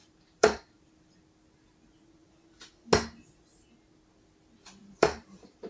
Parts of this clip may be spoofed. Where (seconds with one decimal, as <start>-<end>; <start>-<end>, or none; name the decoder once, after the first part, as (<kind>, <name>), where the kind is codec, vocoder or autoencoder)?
0.0-0.9 (vocoder, BigVGAN v2); 4.8-5.7